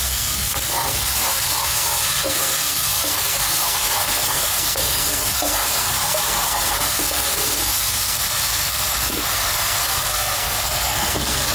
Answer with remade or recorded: remade